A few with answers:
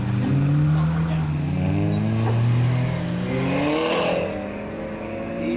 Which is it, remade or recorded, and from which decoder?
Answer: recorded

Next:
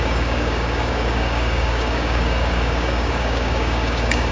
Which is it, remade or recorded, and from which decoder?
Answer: remade, codec, DAC